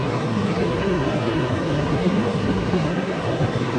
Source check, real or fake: fake